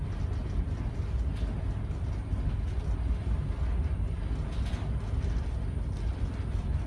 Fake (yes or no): no